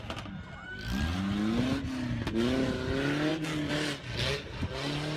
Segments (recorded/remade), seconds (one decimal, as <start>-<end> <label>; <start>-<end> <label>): 0.0-5.2 recorded